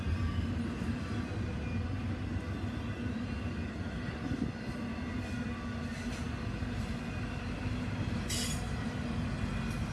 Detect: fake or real real